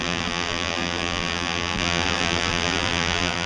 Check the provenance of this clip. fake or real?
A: fake